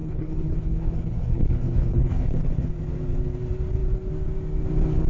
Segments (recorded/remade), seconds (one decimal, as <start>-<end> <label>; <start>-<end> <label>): 0.0-2.7 remade; 2.7-5.1 recorded